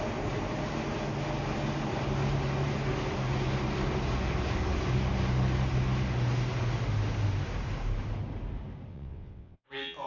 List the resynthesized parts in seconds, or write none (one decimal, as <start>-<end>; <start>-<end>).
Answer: 8.9-9.6